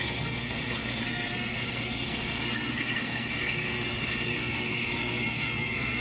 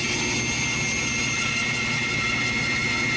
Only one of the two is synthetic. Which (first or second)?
first